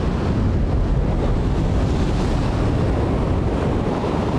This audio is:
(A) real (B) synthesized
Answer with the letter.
A